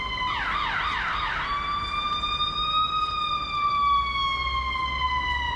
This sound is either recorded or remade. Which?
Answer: recorded